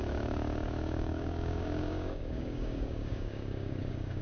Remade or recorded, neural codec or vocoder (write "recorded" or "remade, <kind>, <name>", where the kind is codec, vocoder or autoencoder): remade, codec, DAC